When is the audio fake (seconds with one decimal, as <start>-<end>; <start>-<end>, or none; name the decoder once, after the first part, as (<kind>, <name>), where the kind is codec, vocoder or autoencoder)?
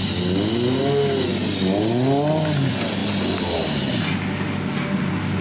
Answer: none